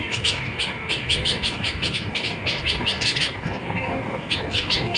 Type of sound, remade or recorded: remade